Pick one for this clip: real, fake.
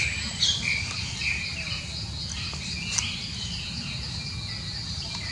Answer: real